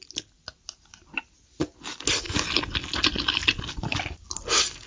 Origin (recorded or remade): recorded